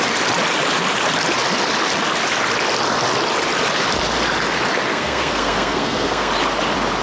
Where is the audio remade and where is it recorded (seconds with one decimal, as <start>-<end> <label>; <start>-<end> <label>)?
0.0-4.9 recorded; 4.9-6.3 remade; 6.3-7.0 recorded

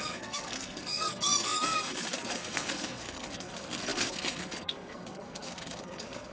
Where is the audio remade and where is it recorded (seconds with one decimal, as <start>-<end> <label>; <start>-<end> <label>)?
0.0-6.3 remade